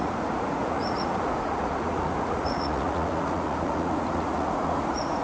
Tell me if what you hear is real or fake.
fake